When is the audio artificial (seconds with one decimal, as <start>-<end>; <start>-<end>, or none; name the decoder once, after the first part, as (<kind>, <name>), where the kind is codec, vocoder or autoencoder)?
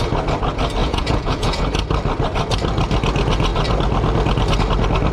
0.8-1.6 (vocoder, Vocos)